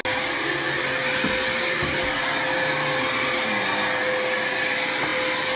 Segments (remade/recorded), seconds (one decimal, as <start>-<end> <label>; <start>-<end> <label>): 0.0-5.6 recorded